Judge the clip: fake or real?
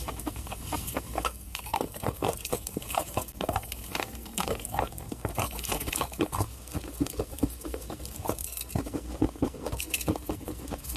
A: fake